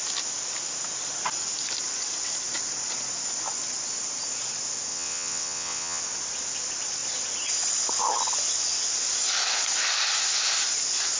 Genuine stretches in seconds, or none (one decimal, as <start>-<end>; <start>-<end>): 0.0-4.9; 6.0-11.2